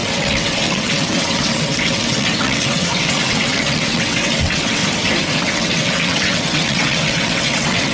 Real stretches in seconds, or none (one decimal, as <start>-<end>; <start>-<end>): 4.8-5.4